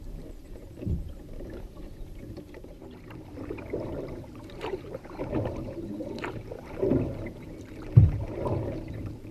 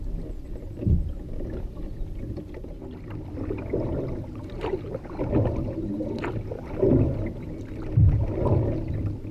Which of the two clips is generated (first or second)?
first